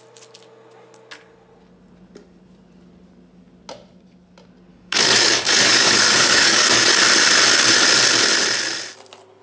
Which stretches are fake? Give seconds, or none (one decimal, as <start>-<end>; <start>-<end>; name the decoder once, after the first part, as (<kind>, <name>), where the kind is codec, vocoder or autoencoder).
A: 4.7-7.0 (codec, DAC)